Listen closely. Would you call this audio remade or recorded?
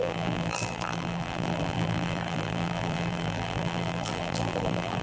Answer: remade